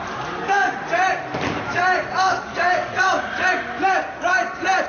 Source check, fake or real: real